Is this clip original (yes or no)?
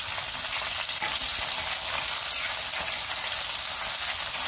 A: yes